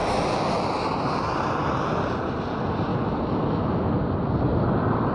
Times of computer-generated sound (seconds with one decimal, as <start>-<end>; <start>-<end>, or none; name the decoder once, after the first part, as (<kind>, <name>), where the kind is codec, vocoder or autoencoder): none